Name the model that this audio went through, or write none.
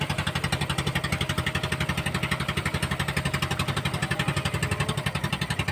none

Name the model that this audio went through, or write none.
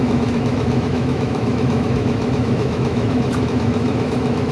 autoencoder, DAC-VAE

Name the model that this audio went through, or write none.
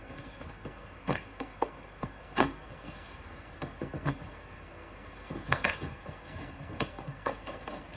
codec, SNAC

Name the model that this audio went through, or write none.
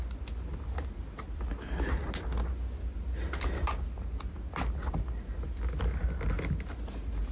none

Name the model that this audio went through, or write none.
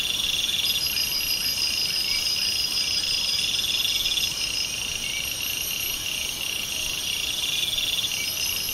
none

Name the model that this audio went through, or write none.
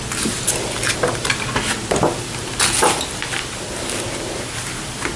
none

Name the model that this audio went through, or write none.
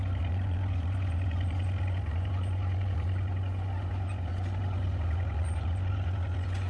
vocoder, Vocos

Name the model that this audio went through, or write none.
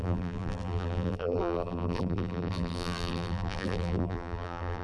vocoder, BigVGAN v2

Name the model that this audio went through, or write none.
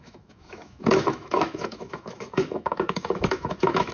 autoencoder, DAC-VAE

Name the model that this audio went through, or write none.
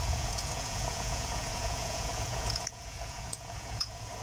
vocoder, Vocos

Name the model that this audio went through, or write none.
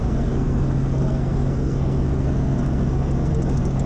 codec, SNAC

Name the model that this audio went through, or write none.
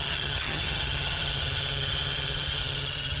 vocoder, HiFi-GAN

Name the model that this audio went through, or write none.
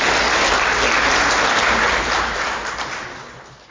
none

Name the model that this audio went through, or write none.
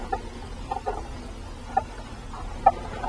none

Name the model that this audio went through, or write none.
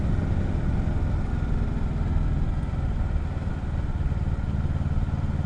none